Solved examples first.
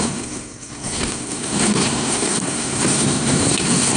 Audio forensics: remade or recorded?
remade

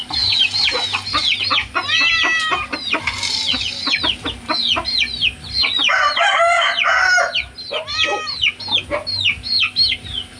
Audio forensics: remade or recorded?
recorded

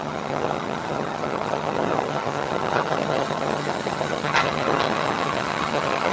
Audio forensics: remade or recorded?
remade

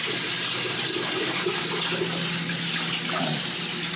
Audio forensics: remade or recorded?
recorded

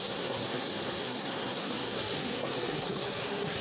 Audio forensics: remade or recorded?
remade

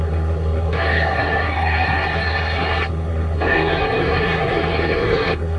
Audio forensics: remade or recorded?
remade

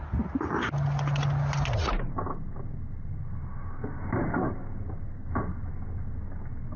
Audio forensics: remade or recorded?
recorded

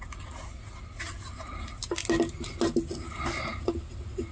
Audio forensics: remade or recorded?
recorded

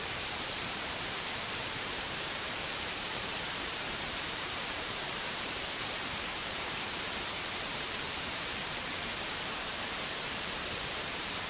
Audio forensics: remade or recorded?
remade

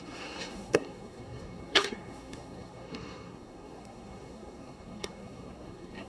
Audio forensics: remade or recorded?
remade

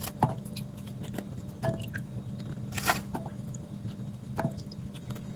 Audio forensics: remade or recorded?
recorded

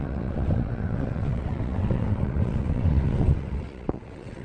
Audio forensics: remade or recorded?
remade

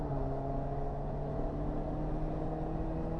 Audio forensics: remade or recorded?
recorded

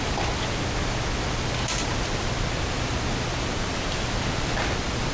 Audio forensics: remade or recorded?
recorded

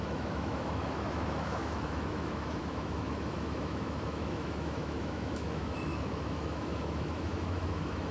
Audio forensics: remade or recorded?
remade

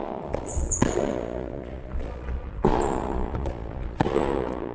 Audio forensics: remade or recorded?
remade